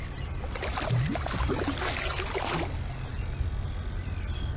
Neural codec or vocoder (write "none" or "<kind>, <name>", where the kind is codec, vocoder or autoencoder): none